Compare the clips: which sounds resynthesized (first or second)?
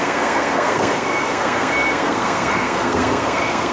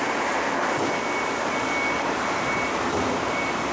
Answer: first